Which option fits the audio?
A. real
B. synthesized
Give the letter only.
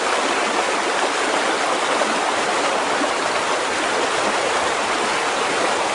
A